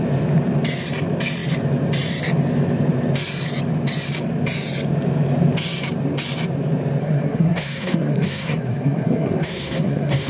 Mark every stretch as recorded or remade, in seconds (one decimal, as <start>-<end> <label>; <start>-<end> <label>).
0.0-7.0 recorded; 7.0-10.3 remade